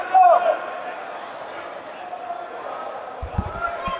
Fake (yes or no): no